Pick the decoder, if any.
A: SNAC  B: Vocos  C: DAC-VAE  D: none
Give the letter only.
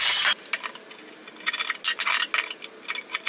D